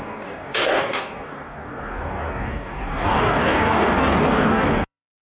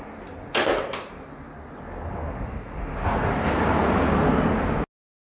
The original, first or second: second